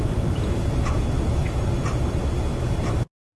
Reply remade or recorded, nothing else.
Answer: recorded